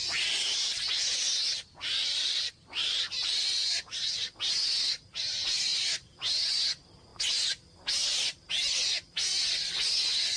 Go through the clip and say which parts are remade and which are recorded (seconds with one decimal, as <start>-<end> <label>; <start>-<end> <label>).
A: 0.0-4.4 remade; 4.4-5.7 recorded; 5.7-6.3 remade; 6.3-10.4 recorded

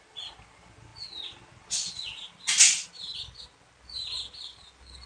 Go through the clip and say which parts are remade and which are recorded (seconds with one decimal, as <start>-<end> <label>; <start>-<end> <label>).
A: 0.0-5.1 recorded

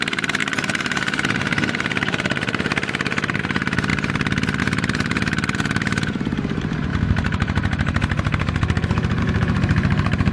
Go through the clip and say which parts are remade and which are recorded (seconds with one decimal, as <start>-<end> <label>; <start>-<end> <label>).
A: 0.0-3.9 remade; 3.9-4.6 recorded; 4.6-6.9 remade; 6.9-9.2 recorded; 9.2-10.3 remade

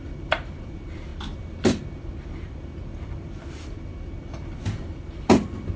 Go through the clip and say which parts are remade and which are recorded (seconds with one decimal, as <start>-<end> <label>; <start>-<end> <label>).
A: 0.0-1.1 remade; 1.1-3.2 recorded; 3.2-3.9 remade; 3.9-4.6 recorded; 4.6-5.8 remade

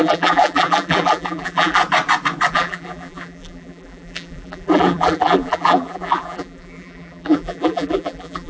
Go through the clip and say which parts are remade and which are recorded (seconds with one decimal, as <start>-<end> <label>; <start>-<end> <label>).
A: 0.0-1.8 remade; 1.8-2.5 recorded; 2.5-8.5 remade

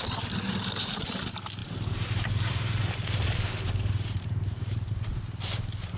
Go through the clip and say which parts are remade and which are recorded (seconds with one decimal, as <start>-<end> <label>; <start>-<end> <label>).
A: 0.0-1.6 recorded; 1.6-5.2 remade; 5.2-6.0 recorded

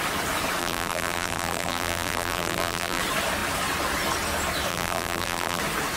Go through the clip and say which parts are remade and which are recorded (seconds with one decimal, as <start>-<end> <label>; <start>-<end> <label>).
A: 0.0-0.6 recorded; 0.6-3.0 remade; 3.0-4.7 recorded; 4.7-5.6 remade; 5.6-6.0 recorded